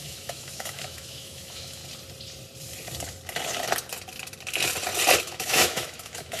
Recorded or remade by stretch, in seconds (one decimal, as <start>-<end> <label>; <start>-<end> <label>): 0.0-1.8 remade; 1.8-5.2 recorded; 5.2-6.4 remade